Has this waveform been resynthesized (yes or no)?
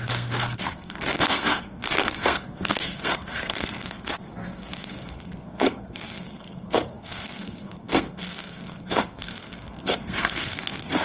yes